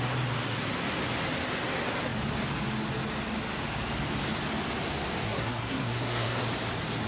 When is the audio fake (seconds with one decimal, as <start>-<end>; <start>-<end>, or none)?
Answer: 5.2-6.4